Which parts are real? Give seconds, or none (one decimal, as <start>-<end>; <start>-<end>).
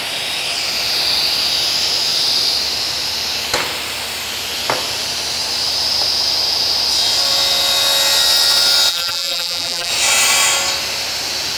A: 0.0-8.9; 9.9-11.6